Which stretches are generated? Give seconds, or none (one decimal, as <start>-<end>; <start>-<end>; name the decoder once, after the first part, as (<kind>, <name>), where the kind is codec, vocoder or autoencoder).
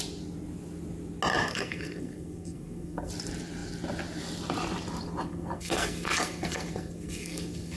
1.5-3.1 (codec, SNAC); 5.3-7.8